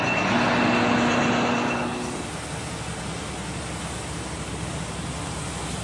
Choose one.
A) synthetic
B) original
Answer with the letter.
B